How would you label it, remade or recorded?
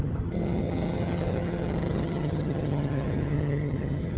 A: remade